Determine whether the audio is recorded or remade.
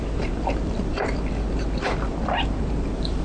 remade